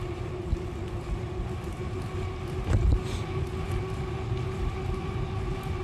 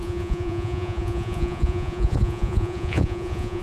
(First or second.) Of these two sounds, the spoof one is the second